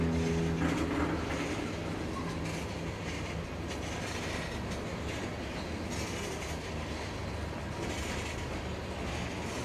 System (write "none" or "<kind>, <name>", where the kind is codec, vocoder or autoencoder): none